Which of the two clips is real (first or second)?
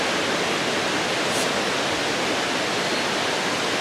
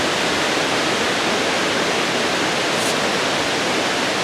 first